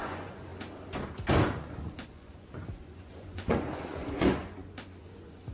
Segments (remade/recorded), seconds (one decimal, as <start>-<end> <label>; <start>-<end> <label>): 0.0-0.5 remade; 0.5-1.4 recorded; 1.4-5.5 remade